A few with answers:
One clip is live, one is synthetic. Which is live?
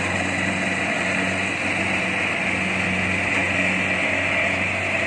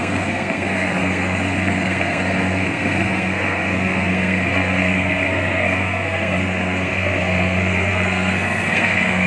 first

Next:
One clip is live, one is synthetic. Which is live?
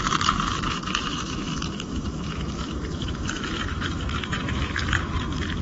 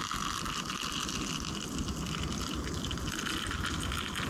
second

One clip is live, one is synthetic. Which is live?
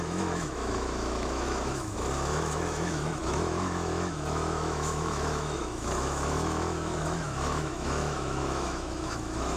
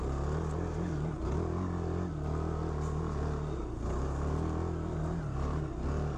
second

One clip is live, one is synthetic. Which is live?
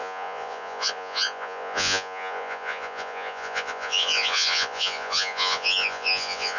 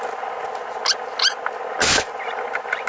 second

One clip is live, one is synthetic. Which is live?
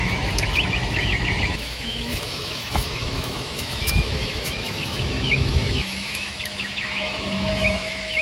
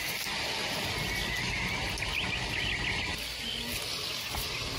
second